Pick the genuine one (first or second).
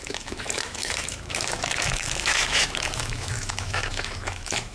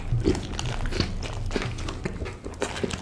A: second